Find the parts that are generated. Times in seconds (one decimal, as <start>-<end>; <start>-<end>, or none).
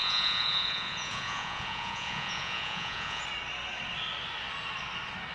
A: 0.0-3.2